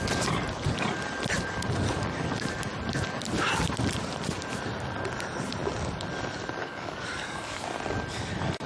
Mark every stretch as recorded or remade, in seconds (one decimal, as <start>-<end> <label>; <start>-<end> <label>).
0.0-6.6 recorded; 6.6-7.6 remade; 7.6-8.7 recorded